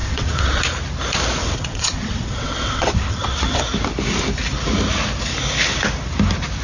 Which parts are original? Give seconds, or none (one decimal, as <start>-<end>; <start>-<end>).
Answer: 0.6-1.4; 3.6-6.6